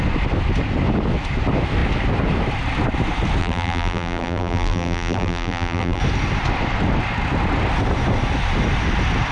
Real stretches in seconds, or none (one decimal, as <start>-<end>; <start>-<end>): 0.0-3.4; 6.0-9.3